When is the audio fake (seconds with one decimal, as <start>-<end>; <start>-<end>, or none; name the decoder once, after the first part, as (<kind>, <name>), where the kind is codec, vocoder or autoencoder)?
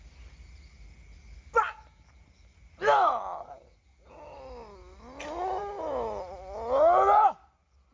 none